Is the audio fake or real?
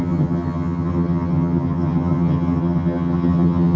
fake